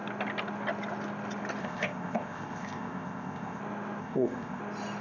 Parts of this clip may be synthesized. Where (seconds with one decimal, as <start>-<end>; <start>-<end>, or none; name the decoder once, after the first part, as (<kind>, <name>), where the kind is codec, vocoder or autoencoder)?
1.6-3.6 (codec, ZipCodec); 4.0-4.6